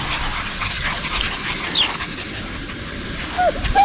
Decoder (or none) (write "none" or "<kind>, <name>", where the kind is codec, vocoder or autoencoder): none